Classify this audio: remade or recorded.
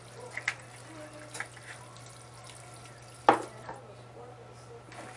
recorded